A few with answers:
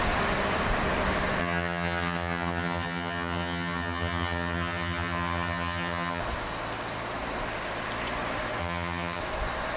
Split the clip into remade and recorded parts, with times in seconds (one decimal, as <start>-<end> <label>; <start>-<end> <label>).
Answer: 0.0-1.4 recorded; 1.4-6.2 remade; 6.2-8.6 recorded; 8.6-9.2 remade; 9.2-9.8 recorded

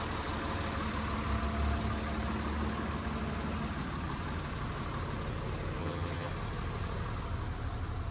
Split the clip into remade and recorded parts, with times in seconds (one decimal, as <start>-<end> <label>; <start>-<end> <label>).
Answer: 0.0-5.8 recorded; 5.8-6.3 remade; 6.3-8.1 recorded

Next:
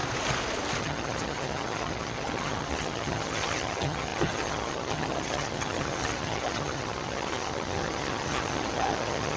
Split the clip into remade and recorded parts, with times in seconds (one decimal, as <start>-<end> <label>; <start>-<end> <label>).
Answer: 0.0-0.8 recorded; 0.8-9.4 remade